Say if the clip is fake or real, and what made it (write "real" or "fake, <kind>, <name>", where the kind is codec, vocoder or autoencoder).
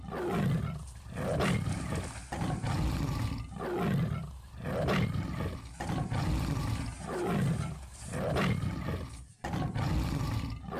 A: real